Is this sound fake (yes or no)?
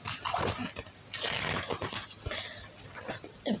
no